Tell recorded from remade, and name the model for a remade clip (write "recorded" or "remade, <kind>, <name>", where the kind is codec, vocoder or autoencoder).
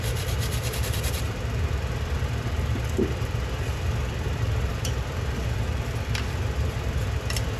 remade, vocoder, BigVGAN v2